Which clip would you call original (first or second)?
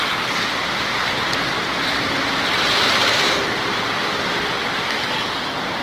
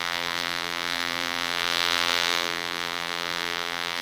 first